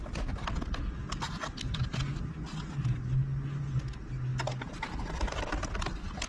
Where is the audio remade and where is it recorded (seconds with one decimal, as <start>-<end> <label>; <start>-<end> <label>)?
0.0-6.3 recorded